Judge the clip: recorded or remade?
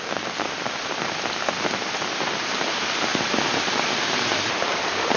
recorded